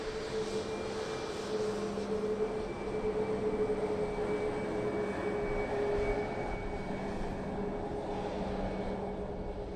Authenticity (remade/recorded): recorded